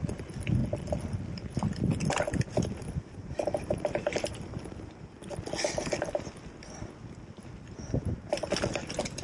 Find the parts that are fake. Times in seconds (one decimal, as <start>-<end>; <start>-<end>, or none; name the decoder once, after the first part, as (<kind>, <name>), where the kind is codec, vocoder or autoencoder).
2.8-5.2 (vocoder, BigVGAN v2)